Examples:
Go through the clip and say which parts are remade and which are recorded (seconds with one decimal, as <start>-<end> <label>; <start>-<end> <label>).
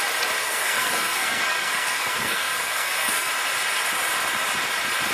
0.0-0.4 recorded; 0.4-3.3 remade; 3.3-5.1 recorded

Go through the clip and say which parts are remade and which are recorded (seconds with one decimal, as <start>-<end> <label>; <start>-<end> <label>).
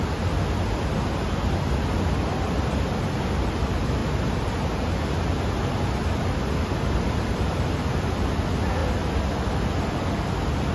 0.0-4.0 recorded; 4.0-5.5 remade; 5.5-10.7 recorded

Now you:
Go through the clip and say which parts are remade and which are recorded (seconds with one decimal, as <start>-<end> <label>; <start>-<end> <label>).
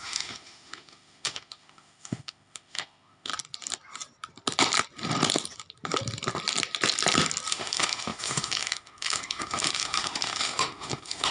0.0-3.3 remade; 3.3-7.5 recorded; 7.5-11.3 remade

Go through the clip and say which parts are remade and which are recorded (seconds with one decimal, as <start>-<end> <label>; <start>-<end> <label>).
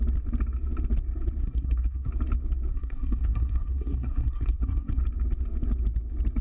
0.0-1.4 recorded; 1.4-2.1 remade; 2.1-2.7 recorded; 2.7-5.0 remade; 5.0-6.4 recorded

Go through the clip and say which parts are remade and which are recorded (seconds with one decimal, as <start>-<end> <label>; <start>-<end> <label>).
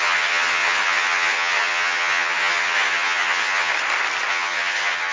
0.0-3.7 remade; 3.7-4.3 recorded; 4.3-5.1 remade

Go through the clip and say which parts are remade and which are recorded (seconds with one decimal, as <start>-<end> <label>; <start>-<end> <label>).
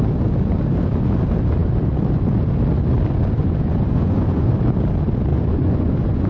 0.0-3.4 recorded; 3.4-4.5 remade; 4.5-5.3 recorded; 5.3-6.3 remade